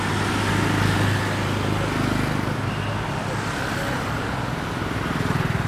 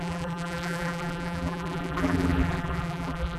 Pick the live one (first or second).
first